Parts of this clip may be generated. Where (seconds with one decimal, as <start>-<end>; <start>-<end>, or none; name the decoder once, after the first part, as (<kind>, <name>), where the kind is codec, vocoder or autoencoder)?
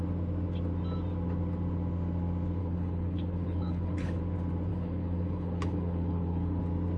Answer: 2.6-4.2 (codec, HILCodec); 4.7-6.6